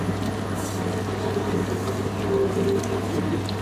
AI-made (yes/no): no